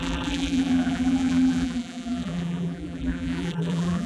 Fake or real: fake